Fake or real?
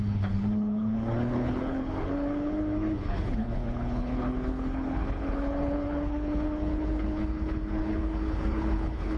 fake